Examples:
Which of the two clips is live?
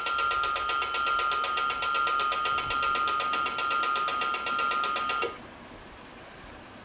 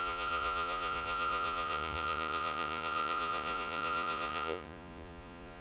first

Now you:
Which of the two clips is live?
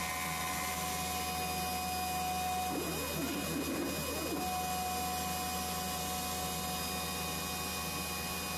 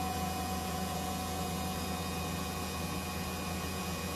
first